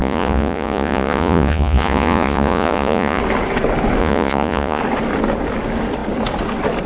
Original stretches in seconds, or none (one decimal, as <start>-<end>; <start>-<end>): 3.2-4.0; 4.8-6.9